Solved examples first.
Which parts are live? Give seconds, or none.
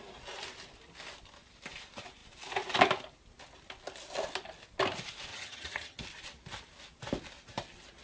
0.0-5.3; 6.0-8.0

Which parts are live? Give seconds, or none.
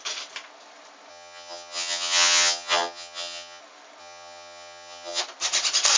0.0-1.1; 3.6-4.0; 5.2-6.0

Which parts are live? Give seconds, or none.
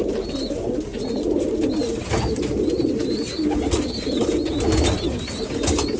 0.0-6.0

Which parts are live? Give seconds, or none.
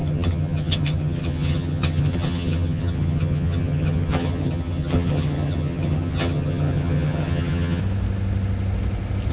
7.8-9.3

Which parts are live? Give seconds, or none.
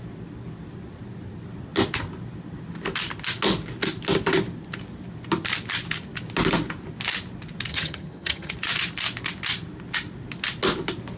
0.0-7.7; 8.5-11.2